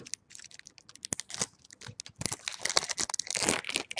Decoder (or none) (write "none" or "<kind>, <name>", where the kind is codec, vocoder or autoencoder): none